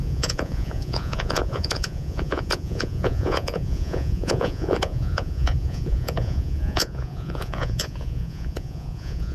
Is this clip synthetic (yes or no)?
yes